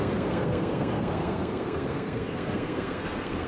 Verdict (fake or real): fake